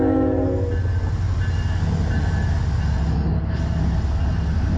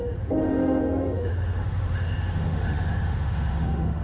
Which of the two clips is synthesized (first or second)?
second